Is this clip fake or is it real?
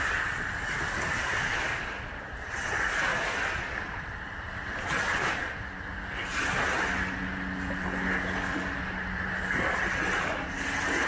real